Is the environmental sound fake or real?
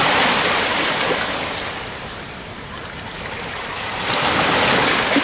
real